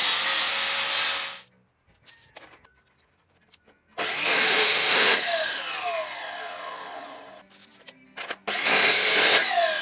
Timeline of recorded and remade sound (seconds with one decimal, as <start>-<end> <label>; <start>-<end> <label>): 0.0-4.4 recorded; 4.4-5.6 remade; 5.6-9.8 recorded